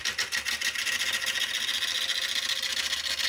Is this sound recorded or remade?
recorded